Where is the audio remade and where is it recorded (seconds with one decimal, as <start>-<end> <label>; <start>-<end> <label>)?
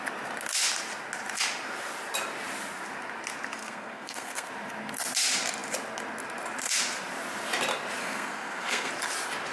0.0-3.6 recorded; 3.6-4.5 remade; 4.5-8.0 recorded; 8.0-8.9 remade; 8.9-9.5 recorded